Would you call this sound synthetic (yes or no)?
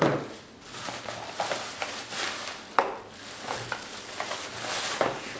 no